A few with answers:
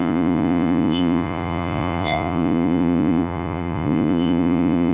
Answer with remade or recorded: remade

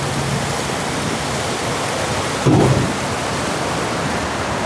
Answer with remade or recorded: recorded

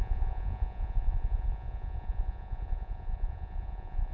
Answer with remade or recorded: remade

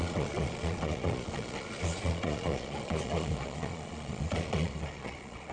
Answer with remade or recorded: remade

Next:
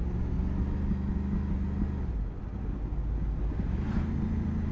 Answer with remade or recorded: recorded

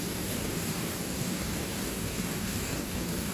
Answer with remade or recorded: remade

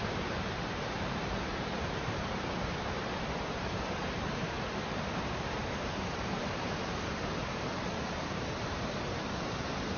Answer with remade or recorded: remade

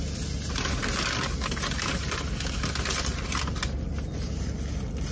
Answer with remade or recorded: recorded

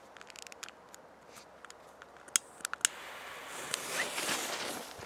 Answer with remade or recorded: recorded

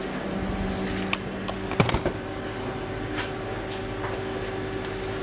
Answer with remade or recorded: recorded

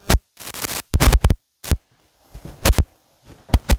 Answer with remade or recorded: recorded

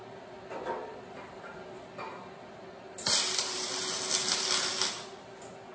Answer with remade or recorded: recorded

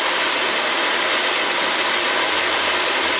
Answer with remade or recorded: recorded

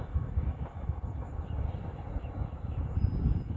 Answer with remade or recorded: recorded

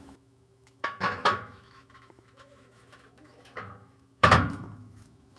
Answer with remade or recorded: remade